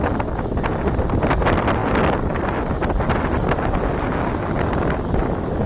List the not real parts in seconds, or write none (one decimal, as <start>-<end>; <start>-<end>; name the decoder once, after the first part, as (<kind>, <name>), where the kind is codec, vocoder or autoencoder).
none